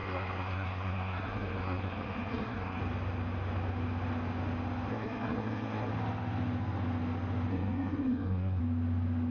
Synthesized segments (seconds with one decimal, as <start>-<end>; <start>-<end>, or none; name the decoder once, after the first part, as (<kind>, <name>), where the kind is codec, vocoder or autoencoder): 0.0-2.8 (codec, SNAC); 4.9-5.9; 7.5-8.6